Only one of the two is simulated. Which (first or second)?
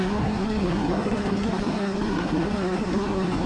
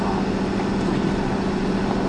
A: first